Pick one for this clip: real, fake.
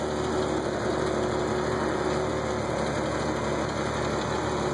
real